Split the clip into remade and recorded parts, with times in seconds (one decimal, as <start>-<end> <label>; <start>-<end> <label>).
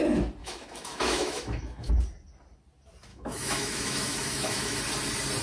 0.0-0.4 recorded; 0.4-1.9 remade; 1.9-3.1 recorded; 3.1-4.8 remade; 4.8-5.4 recorded